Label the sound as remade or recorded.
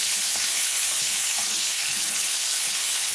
remade